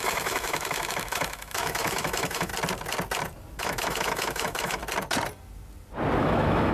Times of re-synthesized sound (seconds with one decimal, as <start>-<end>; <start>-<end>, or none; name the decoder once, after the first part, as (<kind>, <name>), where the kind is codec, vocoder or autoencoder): 0.0-2.5 (autoencoder, DAC-VAE); 3.6-4.8; 6.2-6.7